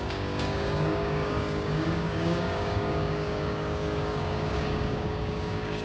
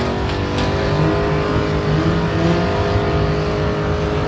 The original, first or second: second